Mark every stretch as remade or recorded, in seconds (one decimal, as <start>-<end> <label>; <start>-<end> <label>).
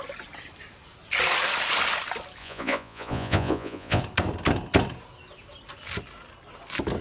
0.0-2.4 recorded; 2.4-4.0 remade; 4.0-7.0 recorded